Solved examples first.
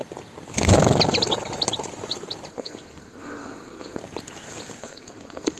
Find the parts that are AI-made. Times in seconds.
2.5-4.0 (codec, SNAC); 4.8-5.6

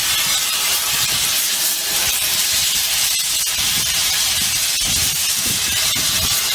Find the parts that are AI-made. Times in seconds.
0.4-4.1 (vocoder, BigVGAN v2); 5.2-5.9

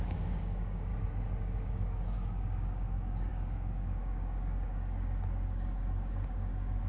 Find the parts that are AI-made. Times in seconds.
0.0-0.9 (codec, DAC); 1.4-6.9

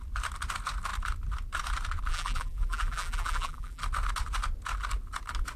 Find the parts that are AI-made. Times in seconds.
2.1-3.8 (vocoder, BigVGAN v2)

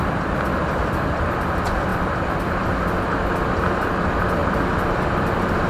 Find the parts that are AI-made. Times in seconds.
0.0-5.7 (vocoder, BigVGAN v2)

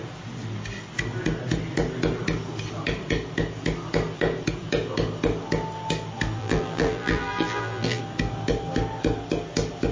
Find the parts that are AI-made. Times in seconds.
6.4-8.0 (vocoder, BigVGAN v2)